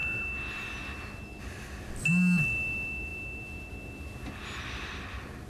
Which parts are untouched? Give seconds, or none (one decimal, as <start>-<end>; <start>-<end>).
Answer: 0.0-5.5